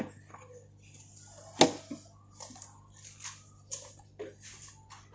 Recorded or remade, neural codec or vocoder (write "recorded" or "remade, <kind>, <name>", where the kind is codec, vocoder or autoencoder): recorded